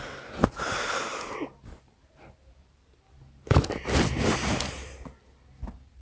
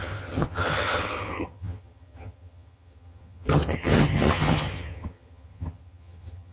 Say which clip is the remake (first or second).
second